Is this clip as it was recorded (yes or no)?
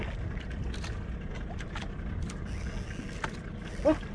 yes